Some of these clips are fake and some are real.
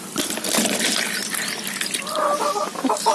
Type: real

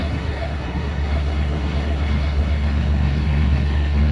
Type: fake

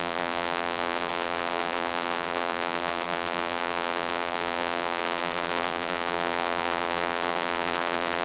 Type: fake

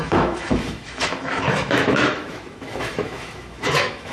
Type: fake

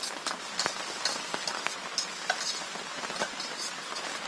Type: real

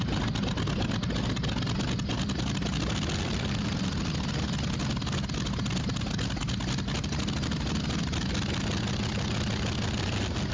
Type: real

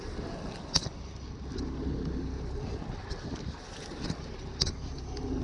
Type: real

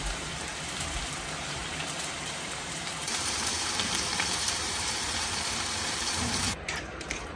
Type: fake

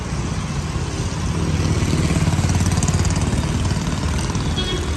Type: real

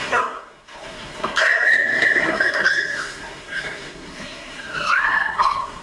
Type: fake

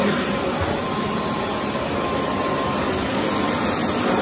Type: real